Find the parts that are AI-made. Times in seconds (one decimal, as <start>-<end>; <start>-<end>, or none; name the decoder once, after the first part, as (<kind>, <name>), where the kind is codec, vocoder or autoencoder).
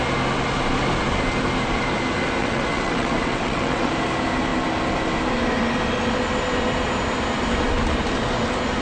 2.4-3.9 (vocoder, WaveNeXt)